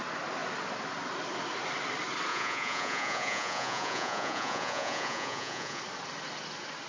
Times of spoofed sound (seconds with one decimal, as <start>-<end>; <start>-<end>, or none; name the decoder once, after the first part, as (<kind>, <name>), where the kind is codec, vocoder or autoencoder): 2.3-5.8 (vocoder, Vocos)